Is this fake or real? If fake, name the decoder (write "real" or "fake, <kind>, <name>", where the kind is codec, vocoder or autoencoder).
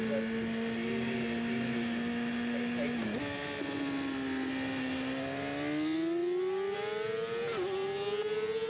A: real